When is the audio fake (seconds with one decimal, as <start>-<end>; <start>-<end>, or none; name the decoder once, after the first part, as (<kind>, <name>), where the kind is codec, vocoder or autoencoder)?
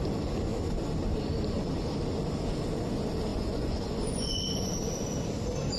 3.3-4.7 (vocoder, Vocos)